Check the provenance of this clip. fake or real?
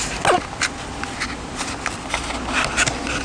real